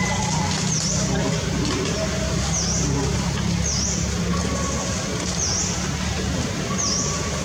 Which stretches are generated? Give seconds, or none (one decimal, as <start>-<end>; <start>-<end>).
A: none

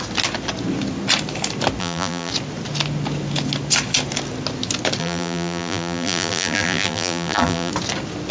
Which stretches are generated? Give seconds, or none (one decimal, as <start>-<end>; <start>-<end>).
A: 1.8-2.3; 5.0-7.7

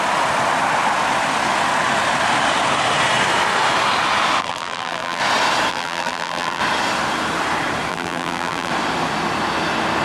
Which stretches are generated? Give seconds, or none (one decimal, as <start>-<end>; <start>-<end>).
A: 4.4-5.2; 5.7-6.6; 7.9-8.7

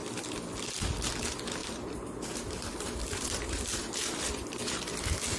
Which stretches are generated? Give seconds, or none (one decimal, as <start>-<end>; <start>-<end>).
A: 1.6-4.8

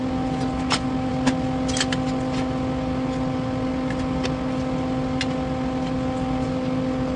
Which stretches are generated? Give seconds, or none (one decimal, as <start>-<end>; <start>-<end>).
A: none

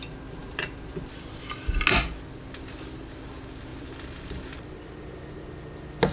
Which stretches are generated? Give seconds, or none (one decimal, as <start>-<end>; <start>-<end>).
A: 0.4-1.5; 3.7-4.9